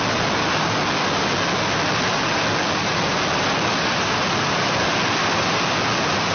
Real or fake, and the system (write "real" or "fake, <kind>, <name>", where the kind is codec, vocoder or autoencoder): real